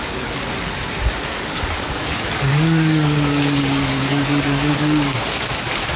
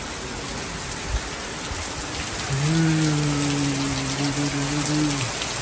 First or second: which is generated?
first